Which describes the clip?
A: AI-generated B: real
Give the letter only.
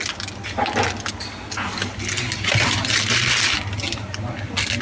B